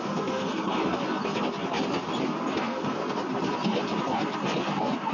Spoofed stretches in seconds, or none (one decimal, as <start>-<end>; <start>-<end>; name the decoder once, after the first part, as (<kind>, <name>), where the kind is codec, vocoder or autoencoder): 0.0-0.8 (codec, SNAC); 2.6-3.0